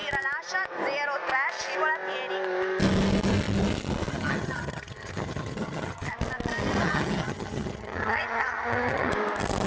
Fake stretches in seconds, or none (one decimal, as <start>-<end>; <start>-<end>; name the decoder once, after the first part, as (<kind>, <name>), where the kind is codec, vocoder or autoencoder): 4.1-6.1 (vocoder, HiFi-GAN); 6.8-9.1